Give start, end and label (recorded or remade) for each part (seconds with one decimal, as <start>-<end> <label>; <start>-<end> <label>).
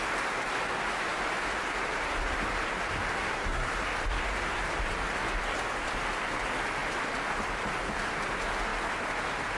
0.0-3.1 recorded; 3.1-3.7 remade; 3.7-9.6 recorded